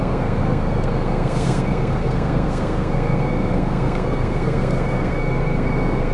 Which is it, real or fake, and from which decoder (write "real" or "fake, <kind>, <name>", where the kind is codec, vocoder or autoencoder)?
fake, codec, SNAC